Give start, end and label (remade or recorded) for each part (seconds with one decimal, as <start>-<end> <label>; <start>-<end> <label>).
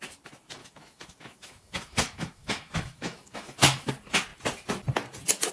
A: 0.0-0.6 recorded; 0.6-3.9 remade; 3.9-5.5 recorded